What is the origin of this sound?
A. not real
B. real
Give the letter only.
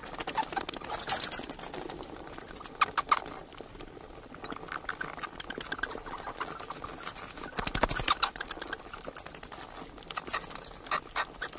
B